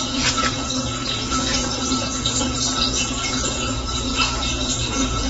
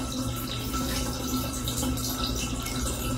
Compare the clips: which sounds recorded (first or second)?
second